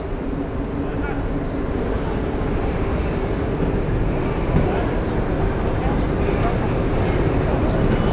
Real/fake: real